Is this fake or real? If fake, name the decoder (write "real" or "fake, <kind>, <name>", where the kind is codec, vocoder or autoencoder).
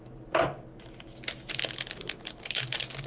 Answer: real